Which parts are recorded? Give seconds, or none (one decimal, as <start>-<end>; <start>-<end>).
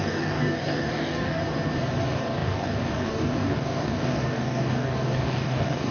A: 1.4-2.0